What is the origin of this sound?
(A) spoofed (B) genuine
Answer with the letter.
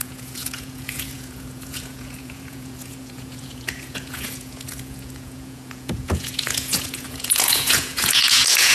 A